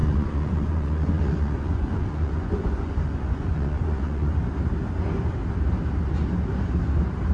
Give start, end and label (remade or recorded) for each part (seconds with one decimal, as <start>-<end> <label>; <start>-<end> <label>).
0.0-4.4 remade; 4.4-7.3 recorded